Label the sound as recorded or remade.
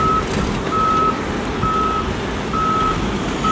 recorded